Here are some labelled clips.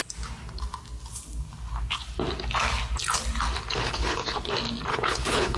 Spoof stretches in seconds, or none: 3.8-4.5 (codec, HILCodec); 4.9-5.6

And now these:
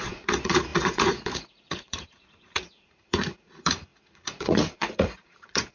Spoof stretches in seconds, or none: 0.0-5.7 (vocoder, Vocos)